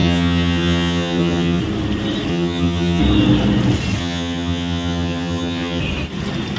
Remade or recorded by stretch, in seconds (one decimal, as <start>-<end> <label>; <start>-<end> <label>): 0.0-1.6 remade; 1.6-2.3 recorded; 2.3-3.0 remade; 3.0-4.0 recorded; 4.0-5.8 remade; 5.8-6.6 recorded

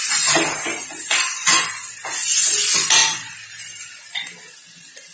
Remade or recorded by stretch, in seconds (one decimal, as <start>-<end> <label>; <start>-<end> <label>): 0.0-5.1 recorded